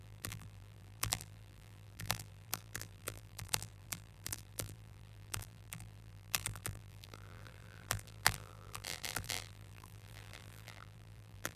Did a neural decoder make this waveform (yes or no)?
yes